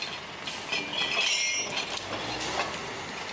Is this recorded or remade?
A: recorded